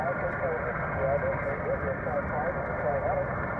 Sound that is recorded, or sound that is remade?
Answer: recorded